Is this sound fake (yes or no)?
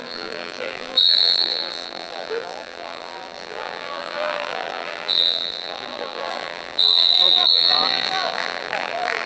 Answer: yes